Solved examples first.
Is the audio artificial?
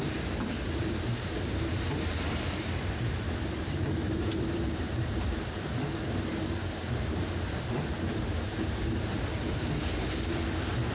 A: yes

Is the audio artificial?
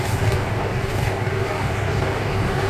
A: yes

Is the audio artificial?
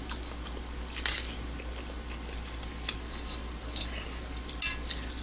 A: no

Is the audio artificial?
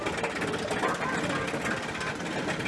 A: no